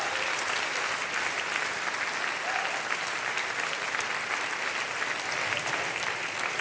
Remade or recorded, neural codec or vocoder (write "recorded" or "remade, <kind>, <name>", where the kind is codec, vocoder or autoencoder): recorded